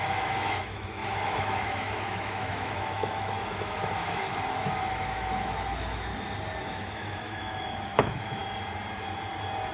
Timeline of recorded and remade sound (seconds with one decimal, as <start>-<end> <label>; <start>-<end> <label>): 0.0-6.1 remade; 6.1-6.6 recorded; 6.6-8.4 remade; 8.4-9.7 recorded